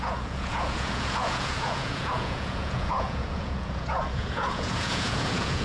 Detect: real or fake fake